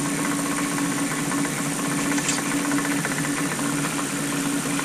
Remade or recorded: recorded